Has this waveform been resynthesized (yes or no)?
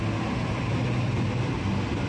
no